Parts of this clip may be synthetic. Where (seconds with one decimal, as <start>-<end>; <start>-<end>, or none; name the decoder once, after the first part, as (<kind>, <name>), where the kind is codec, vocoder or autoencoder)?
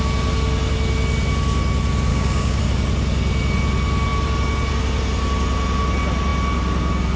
2.1-2.6 (codec, DAC)